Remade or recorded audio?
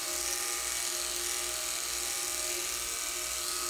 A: recorded